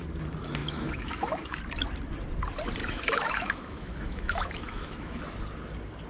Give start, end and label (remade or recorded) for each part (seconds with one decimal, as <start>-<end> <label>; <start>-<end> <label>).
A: 0.0-0.6 recorded; 0.6-1.6 remade; 1.6-2.8 recorded; 2.8-5.2 remade; 5.2-6.1 recorded